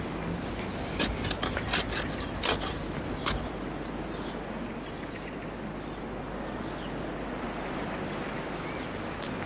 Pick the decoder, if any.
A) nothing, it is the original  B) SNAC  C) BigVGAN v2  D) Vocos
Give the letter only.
A